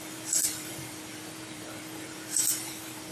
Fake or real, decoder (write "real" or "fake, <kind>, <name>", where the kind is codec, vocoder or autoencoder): fake, vocoder, BigVGAN v2